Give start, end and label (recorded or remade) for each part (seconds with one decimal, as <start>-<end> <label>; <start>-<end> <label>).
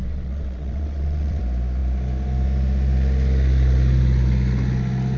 0.0-1.4 remade; 1.4-5.2 recorded